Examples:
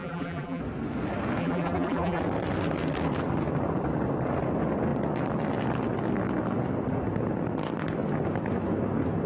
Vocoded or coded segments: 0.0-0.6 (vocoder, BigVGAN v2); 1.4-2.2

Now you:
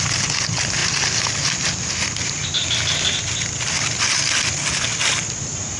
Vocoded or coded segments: none